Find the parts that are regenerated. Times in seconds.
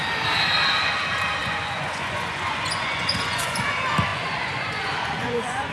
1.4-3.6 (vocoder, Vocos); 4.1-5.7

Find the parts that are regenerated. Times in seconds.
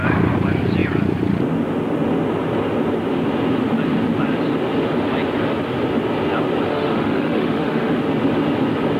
6.7-7.9 (autoencoder, DAC-VAE)